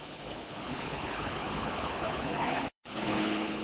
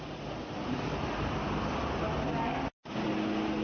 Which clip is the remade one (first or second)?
first